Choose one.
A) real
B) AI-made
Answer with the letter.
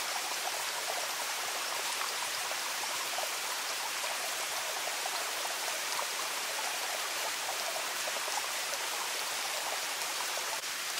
B